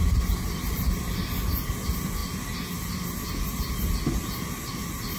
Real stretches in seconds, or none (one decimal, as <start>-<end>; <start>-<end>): 0.0-5.2